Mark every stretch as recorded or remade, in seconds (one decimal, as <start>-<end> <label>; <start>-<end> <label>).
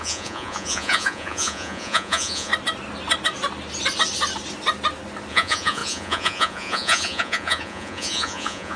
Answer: 0.0-2.5 remade; 2.5-5.3 recorded; 5.3-8.8 remade